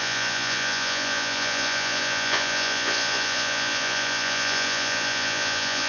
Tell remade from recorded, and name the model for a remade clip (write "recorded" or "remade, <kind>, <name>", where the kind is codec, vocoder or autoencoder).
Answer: remade, vocoder, Vocos